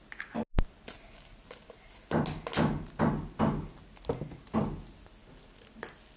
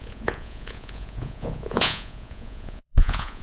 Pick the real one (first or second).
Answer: first